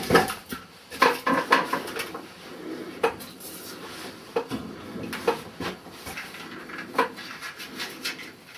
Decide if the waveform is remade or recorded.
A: recorded